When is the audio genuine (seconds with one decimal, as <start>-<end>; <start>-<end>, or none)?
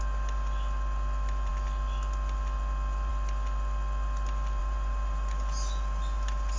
0.0-4.6